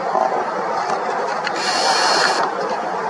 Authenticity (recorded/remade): recorded